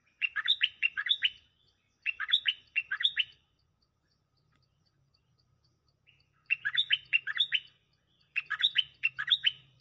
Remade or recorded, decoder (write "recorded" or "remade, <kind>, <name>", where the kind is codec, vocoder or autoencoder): remade, vocoder, Vocos